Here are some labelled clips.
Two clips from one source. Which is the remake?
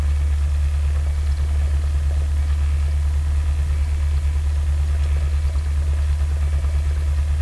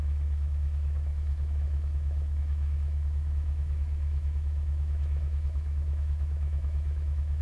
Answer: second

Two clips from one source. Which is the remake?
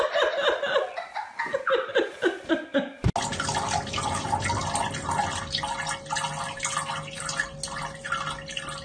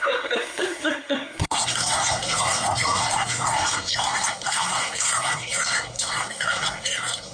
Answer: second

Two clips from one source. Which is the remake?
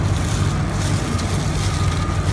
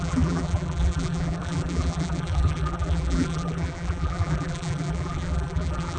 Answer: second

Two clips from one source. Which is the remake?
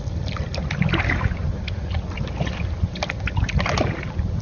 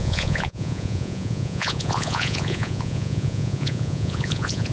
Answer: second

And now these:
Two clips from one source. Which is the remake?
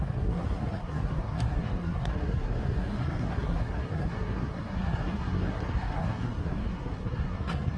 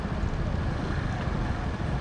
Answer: first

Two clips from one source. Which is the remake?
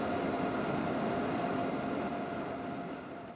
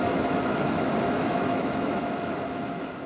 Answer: second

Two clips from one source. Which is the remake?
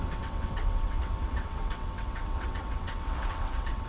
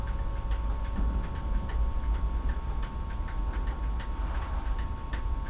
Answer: first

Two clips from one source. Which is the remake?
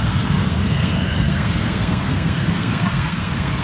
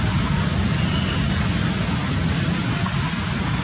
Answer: first